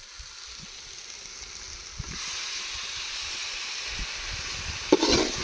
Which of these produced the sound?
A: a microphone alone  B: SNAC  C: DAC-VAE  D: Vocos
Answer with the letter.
A